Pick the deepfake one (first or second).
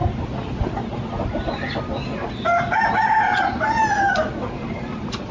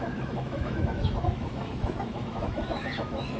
second